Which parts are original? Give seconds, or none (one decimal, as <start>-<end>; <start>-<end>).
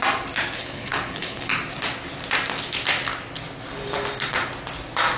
0.0-0.6; 1.5-5.2